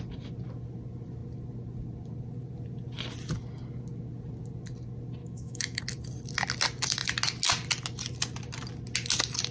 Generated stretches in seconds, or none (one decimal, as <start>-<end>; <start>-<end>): 5.2-5.8